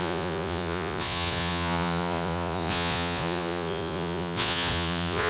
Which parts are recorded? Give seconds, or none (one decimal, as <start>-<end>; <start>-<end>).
none